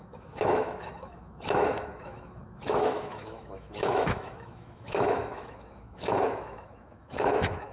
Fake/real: fake